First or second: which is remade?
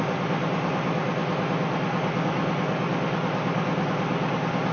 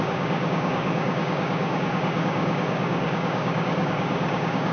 second